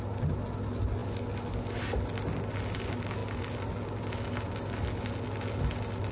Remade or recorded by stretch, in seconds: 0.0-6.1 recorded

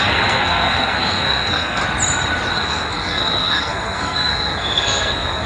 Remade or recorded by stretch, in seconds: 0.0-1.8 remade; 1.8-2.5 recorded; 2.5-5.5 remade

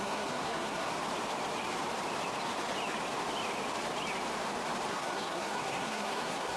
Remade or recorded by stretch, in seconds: 0.0-0.9 remade; 0.9-4.9 recorded; 4.9-6.6 remade

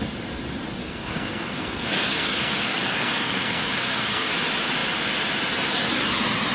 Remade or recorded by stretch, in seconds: 0.0-0.8 recorded; 0.8-4.3 remade; 4.3-6.5 recorded

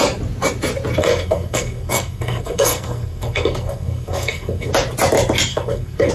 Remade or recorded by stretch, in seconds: 0.0-1.0 recorded; 1.0-4.7 remade; 4.7-5.5 recorded; 5.5-6.1 remade

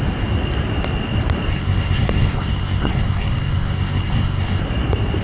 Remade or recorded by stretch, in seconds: 0.0-1.5 recorded; 1.5-4.6 remade; 4.6-5.2 recorded